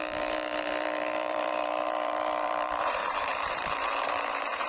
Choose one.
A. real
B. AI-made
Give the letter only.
B